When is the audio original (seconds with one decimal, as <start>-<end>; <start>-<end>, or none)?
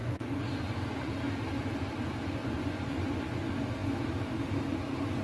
1.1-2.4; 3.4-5.2